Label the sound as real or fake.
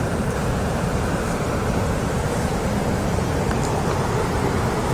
fake